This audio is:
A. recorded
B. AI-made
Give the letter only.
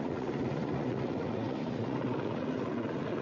B